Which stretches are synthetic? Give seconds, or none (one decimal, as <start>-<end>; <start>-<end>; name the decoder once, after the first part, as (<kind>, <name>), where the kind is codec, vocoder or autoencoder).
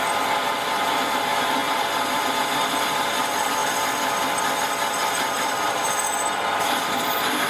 0.0-1.6 (vocoder, BigVGAN v2); 3.2-7.5